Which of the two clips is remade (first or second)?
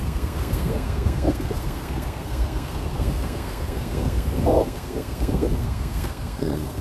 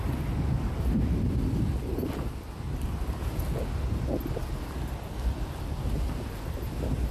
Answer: first